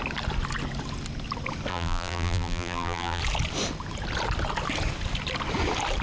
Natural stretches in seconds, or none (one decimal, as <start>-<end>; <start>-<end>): 0.0-1.7; 3.2-6.0